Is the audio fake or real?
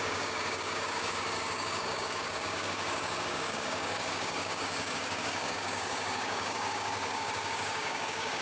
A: fake